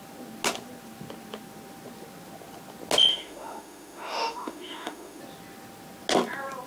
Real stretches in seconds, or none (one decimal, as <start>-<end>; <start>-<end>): 0.0-3.1; 5.2-6.7